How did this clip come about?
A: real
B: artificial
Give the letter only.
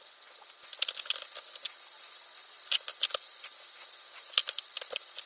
A